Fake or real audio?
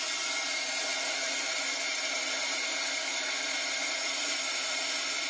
real